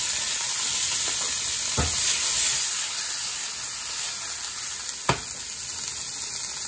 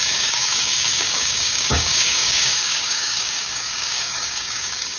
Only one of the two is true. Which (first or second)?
first